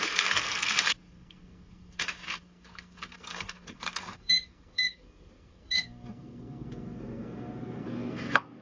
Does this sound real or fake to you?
fake